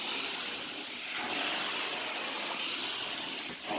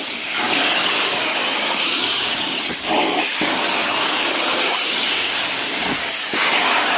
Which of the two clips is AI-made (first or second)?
second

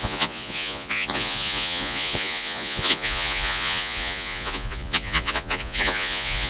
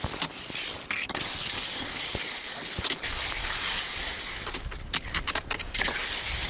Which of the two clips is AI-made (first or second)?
first